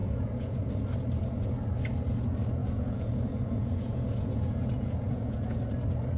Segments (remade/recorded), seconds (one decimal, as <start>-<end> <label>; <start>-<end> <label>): 0.0-0.7 remade; 0.7-2.6 recorded; 2.6-5.6 remade; 5.6-6.2 recorded